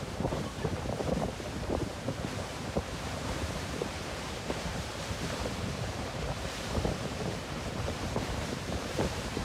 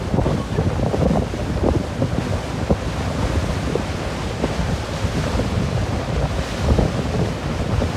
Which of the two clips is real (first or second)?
second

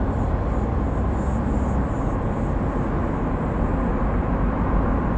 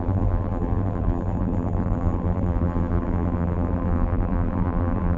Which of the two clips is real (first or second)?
first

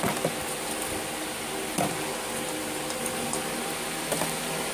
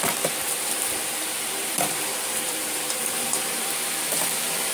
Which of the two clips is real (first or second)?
first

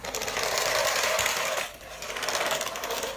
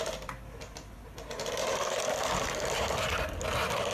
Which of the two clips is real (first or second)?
second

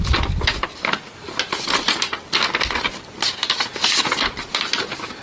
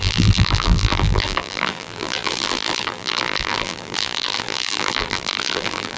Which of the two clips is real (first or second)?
first